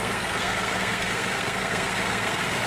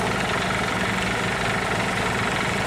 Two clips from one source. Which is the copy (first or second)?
first